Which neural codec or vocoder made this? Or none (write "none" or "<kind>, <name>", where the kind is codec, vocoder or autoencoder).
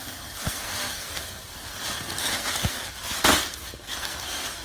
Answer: codec, SNAC